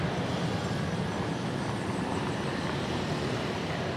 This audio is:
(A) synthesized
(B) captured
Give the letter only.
B